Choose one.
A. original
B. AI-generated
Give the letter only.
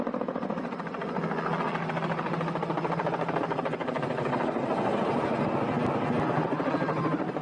A